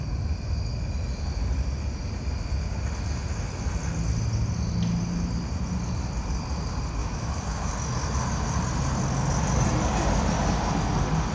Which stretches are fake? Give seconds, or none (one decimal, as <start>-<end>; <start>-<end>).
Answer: 7.0-7.7

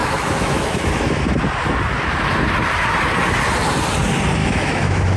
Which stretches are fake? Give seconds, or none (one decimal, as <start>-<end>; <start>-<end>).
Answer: 0.0-1.4; 4.4-5.2

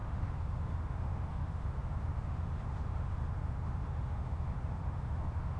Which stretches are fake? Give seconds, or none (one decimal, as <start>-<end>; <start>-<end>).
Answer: 0.0-5.6

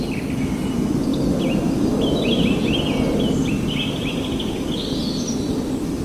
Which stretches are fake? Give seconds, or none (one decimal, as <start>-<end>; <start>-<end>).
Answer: none